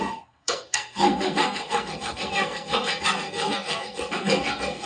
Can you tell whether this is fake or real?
fake